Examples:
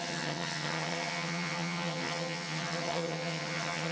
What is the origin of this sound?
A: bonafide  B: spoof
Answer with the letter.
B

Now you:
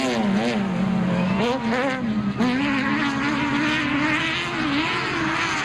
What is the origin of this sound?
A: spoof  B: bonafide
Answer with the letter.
B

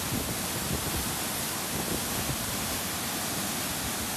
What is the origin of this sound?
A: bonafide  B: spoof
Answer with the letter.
A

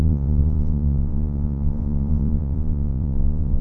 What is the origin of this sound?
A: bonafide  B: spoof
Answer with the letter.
B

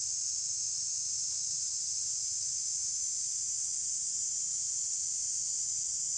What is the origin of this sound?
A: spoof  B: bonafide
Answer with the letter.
B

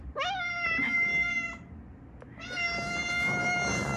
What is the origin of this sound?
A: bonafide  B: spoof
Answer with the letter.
A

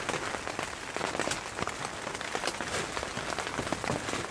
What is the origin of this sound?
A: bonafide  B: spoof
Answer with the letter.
A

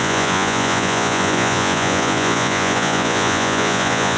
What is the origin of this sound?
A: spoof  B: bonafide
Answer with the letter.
A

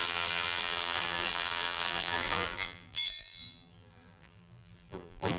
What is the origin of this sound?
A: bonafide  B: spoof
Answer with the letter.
B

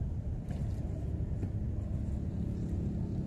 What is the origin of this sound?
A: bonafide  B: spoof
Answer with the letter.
A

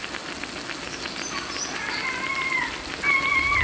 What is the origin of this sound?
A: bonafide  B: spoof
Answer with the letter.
A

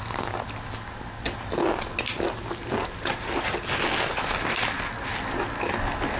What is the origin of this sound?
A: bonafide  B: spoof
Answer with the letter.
A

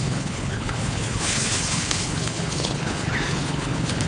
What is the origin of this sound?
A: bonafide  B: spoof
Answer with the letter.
B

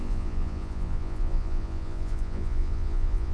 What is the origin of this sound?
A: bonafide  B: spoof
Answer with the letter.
B